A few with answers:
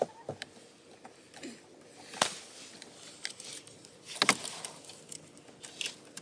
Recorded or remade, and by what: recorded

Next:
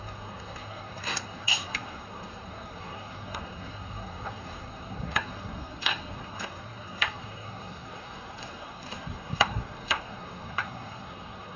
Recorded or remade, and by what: remade, codec, SNAC